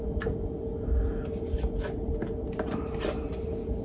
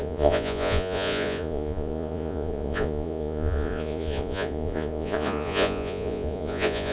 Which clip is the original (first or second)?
first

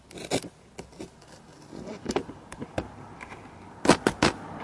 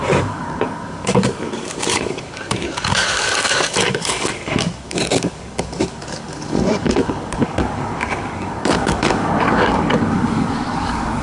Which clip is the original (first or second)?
first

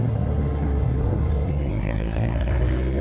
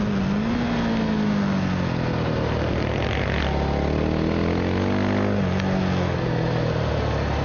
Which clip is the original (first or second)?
second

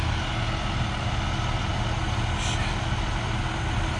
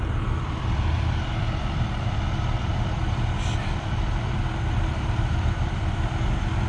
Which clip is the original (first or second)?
first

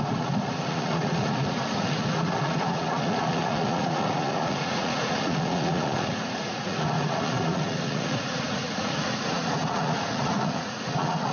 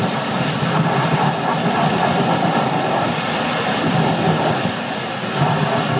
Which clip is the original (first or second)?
second